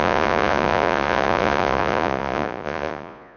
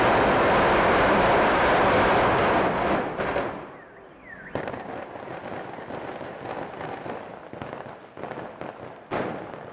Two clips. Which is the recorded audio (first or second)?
second